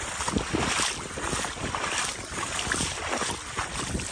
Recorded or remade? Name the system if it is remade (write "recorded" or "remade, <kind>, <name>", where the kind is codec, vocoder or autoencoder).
recorded